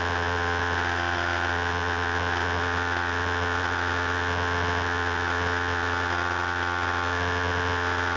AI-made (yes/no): no